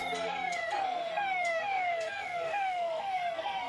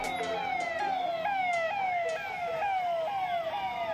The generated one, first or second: first